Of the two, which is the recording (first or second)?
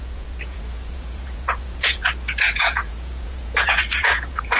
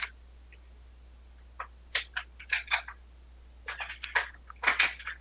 second